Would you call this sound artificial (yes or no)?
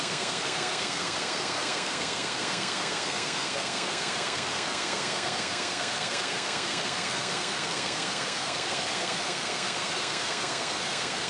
yes